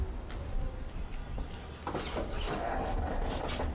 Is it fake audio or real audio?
real